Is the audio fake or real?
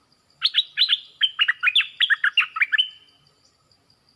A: real